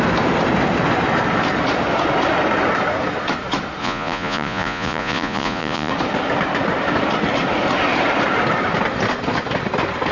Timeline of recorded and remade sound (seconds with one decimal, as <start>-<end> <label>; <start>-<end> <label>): 0.0-3.8 recorded; 3.8-5.9 remade; 5.9-10.1 recorded